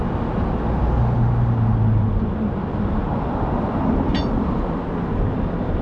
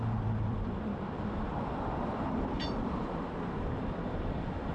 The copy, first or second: second